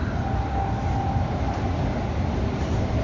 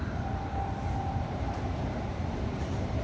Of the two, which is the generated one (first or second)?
second